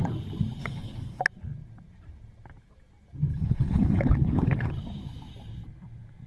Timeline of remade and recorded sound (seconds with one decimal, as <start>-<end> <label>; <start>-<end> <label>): 0.0-0.6 recorded; 0.6-1.2 remade; 1.2-3.3 recorded; 3.3-4.7 remade; 4.7-6.3 recorded